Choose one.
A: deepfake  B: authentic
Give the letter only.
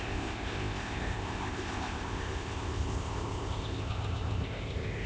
A